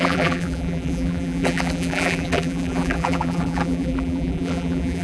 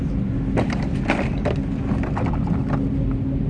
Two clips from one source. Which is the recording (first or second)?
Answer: second